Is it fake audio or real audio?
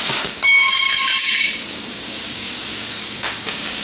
fake